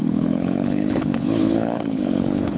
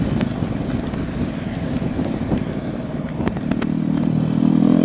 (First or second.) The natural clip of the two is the second